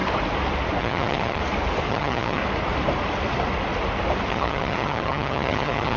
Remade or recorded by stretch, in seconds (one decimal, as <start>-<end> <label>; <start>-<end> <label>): 0.0-0.8 recorded; 0.8-1.4 remade; 1.4-1.9 recorded; 1.9-2.4 remade; 2.4-4.3 recorded; 4.3-6.0 remade